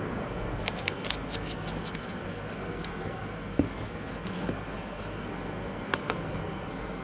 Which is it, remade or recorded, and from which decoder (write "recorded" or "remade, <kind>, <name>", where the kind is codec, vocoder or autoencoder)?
remade, codec, SNAC